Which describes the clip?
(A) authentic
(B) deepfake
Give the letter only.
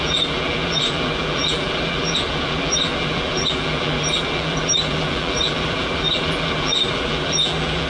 B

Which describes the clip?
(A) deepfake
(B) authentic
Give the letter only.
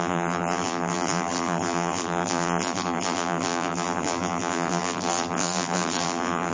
A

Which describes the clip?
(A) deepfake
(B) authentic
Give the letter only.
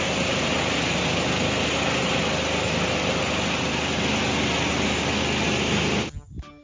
B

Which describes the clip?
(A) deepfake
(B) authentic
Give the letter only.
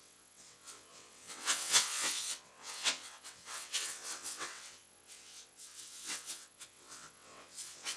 A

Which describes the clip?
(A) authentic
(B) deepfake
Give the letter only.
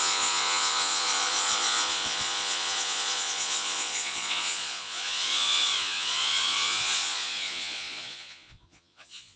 B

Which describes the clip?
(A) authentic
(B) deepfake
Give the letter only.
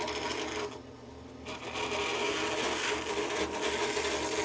A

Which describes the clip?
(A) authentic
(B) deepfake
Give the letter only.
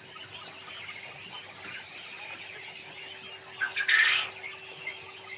A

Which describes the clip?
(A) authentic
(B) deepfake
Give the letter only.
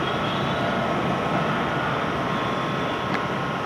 A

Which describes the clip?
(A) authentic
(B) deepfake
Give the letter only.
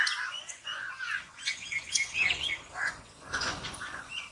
B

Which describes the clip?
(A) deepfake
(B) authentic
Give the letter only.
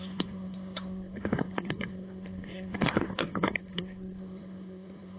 A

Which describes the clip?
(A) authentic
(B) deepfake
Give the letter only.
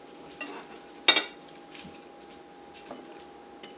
A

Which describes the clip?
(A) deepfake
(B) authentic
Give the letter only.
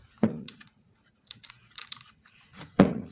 A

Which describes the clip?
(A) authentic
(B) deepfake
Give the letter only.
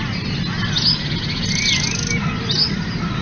A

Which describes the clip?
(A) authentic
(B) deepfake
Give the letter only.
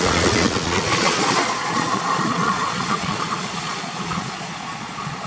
B